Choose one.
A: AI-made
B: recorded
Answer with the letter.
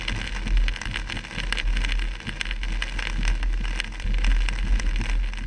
B